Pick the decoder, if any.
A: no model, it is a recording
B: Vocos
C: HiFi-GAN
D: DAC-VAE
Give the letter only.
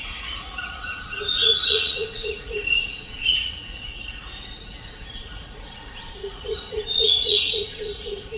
B